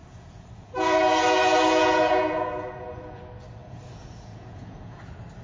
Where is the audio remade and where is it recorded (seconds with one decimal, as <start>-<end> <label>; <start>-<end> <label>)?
0.0-3.2 remade; 3.2-3.6 recorded; 3.6-5.0 remade; 5.0-5.4 recorded